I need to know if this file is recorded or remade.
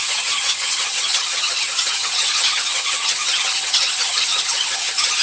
remade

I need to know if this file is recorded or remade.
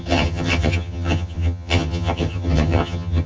remade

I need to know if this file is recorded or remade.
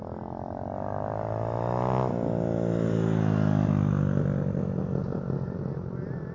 recorded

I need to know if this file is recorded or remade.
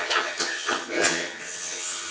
remade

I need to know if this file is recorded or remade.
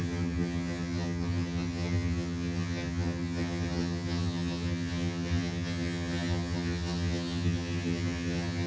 remade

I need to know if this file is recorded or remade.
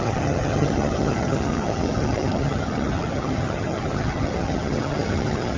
remade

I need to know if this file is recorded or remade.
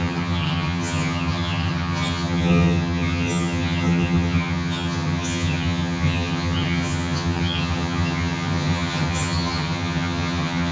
remade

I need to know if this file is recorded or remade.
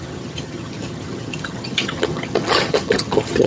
remade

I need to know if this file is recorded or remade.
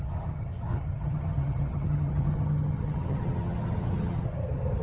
remade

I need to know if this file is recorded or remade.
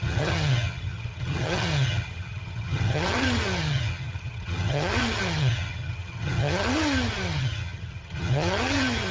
remade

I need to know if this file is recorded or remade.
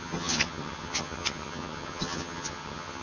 remade